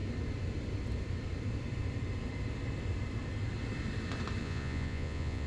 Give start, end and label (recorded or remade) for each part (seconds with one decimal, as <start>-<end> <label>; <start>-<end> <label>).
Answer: 0.0-4.4 recorded; 4.4-5.5 remade